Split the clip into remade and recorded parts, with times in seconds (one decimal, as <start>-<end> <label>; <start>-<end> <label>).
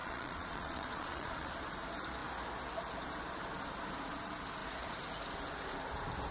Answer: 0.0-1.5 remade; 1.5-6.3 recorded